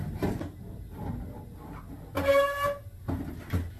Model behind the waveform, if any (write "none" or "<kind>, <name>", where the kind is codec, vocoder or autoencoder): none